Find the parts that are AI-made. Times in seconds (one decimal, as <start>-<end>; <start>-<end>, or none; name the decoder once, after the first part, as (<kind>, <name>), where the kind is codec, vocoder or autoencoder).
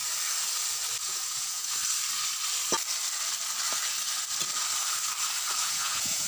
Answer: 1.0-1.8 (vocoder, Vocos); 5.6-6.3